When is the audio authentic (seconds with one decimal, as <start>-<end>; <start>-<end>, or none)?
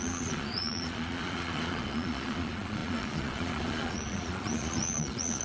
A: none